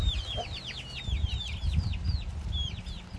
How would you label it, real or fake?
real